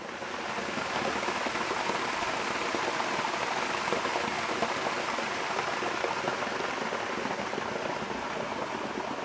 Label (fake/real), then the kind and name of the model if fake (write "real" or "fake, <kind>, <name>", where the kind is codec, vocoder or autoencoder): real